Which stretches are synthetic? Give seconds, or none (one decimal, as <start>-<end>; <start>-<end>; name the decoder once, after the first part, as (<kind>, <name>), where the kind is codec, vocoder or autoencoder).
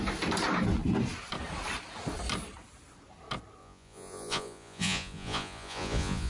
3.6-6.3 (vocoder, Vocos)